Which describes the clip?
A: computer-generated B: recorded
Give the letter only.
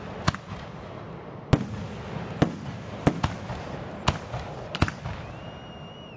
B